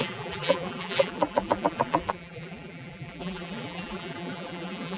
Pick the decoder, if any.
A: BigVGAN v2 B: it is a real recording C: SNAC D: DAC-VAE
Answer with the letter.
A